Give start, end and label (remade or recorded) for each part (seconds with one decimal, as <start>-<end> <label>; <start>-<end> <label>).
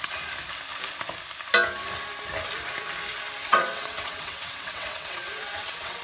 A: 0.0-3.5 recorded; 3.5-6.0 remade